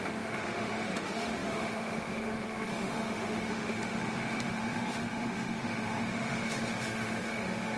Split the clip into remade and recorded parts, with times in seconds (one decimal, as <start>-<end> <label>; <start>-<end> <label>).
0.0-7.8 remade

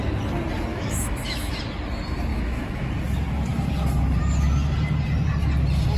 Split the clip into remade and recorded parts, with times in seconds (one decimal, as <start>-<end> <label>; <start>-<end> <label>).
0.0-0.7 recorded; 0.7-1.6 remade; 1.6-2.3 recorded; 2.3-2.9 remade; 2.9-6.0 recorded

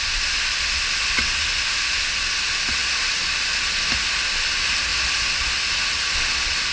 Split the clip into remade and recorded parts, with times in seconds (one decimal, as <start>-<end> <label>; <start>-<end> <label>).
0.0-6.7 recorded

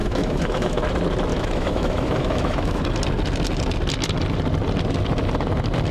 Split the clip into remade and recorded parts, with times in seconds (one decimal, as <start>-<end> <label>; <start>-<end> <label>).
0.0-0.8 remade; 0.8-1.3 recorded; 1.3-2.8 remade; 2.8-5.9 recorded

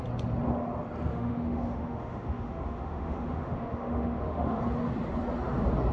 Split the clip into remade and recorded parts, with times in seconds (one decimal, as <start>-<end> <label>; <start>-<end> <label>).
0.0-1.1 recorded; 1.1-4.6 remade; 4.6-5.9 recorded